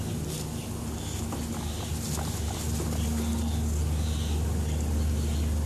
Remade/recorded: recorded